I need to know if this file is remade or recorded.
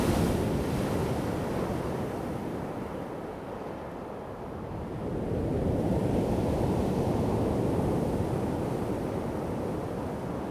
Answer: recorded